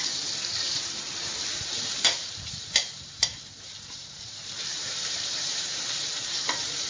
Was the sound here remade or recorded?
remade